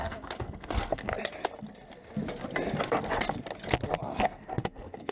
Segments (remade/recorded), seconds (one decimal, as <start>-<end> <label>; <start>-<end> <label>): 0.0-1.1 remade; 1.1-4.2 recorded; 4.2-5.1 remade